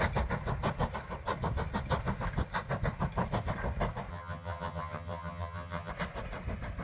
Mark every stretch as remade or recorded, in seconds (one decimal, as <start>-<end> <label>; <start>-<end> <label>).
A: 0.0-4.1 recorded; 4.1-5.9 remade; 5.9-6.8 recorded